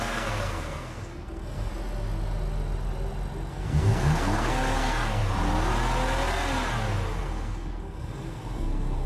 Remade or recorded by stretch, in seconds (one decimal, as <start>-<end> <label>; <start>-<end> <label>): 0.0-1.7 remade; 1.7-3.5 recorded; 3.5-5.2 remade; 5.2-7.2 recorded; 7.2-9.1 remade